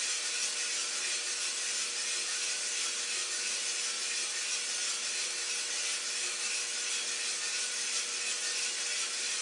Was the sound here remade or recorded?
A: recorded